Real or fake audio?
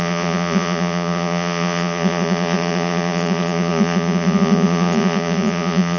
fake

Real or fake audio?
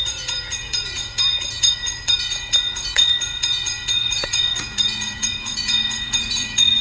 fake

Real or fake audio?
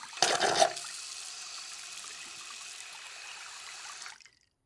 real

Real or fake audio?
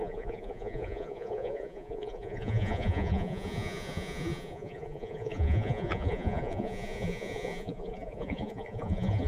fake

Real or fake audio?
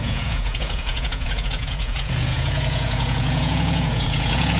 fake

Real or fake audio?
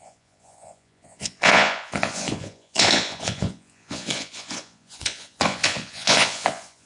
fake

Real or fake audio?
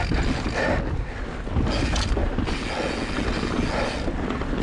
real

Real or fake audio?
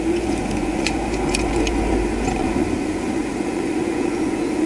fake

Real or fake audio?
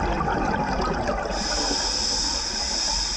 real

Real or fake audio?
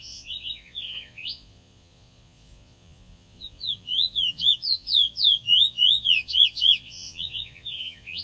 fake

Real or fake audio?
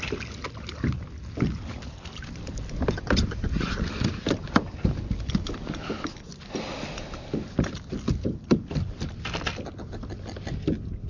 real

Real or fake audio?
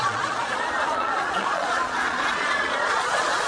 fake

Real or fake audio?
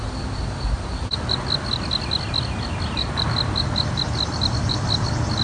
real